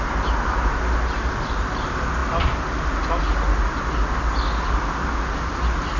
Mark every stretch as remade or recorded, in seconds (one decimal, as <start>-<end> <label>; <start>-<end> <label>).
0.0-6.0 recorded